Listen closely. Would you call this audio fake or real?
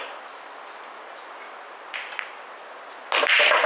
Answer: real